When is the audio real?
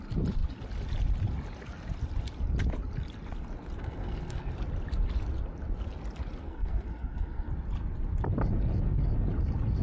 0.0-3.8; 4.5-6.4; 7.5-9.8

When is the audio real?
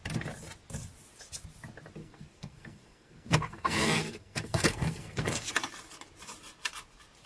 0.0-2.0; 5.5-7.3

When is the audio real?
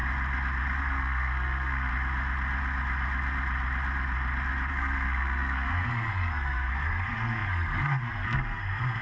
0.0-0.8; 1.9-4.7